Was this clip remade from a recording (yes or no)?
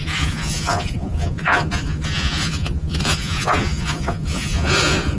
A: yes